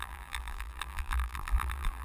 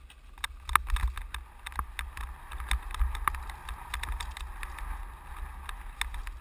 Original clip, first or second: second